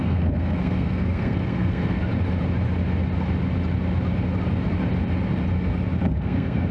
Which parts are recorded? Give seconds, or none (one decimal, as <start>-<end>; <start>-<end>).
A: 2.0-6.0